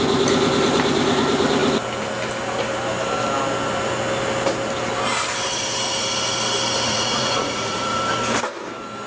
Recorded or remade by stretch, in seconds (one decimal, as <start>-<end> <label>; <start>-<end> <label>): 0.0-6.9 recorded; 6.9-8.0 remade; 8.0-9.1 recorded